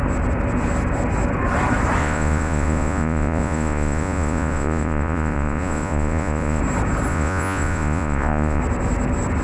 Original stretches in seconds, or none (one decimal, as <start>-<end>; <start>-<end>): 0.0-2.0; 6.6-7.1; 8.6-9.4